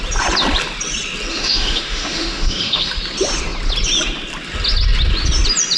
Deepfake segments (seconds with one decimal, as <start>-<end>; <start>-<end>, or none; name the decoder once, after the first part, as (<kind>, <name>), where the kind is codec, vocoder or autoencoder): 1.3-2.9 (autoencoder, DAC-VAE)